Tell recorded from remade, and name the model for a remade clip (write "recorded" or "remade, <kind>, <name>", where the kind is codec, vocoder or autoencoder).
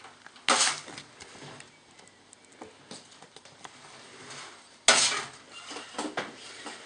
recorded